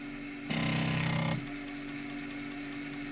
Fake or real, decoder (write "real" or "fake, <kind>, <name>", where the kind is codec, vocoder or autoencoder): real